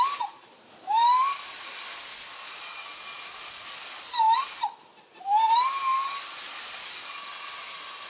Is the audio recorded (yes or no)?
yes